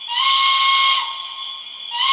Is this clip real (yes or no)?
yes